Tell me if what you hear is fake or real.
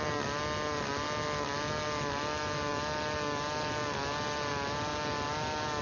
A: real